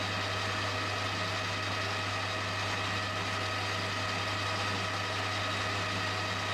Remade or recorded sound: recorded